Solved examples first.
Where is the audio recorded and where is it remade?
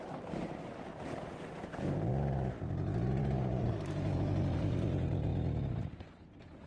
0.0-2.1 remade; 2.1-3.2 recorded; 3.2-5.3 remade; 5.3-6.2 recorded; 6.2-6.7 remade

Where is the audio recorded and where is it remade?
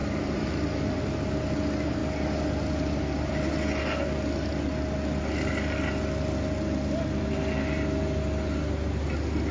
0.0-1.1 remade; 1.1-9.5 recorded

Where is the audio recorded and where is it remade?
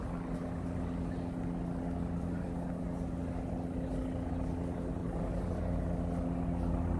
0.0-5.0 recorded; 5.0-5.6 remade; 5.6-7.0 recorded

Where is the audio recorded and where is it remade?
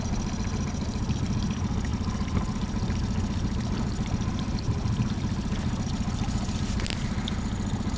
0.0-8.0 recorded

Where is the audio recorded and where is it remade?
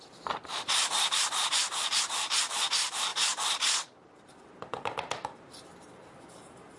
0.0-3.1 remade; 3.1-4.0 recorded; 4.0-6.8 remade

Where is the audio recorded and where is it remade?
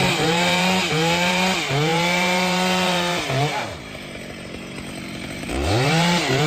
0.0-6.5 remade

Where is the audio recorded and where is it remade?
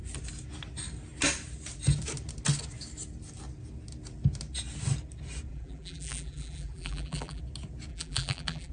0.0-5.5 recorded; 5.5-7.4 remade; 7.4-7.9 recorded; 7.9-8.7 remade